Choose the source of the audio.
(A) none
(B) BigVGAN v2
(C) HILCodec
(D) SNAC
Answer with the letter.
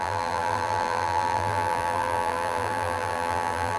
B